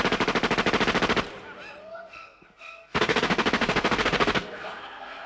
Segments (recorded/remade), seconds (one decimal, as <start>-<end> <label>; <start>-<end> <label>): 0.0-1.8 recorded; 1.8-5.3 remade